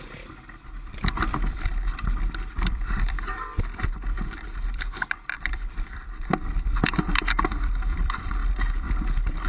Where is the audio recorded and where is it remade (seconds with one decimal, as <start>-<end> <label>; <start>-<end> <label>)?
0.0-8.4 remade; 8.4-9.5 recorded